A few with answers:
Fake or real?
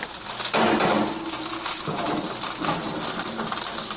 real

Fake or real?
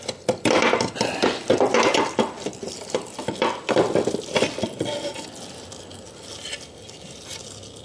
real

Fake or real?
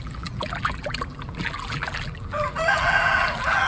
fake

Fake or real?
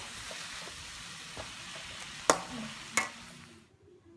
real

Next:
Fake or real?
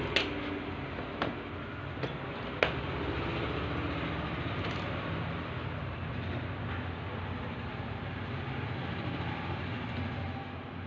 real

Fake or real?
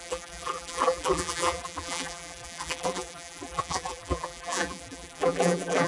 fake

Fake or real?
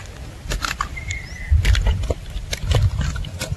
fake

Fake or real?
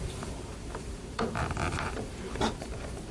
fake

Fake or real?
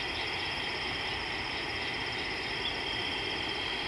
real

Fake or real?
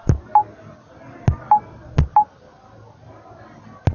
real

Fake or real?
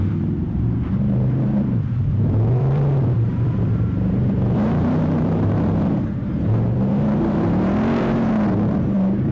fake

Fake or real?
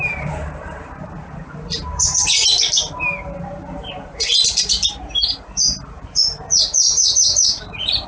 fake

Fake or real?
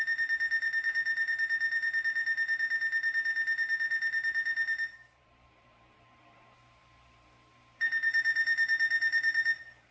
fake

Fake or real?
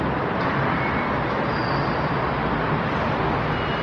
real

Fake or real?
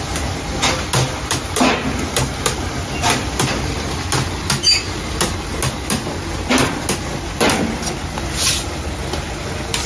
real